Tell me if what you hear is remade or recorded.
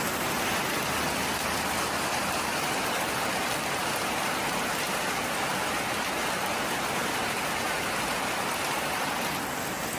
recorded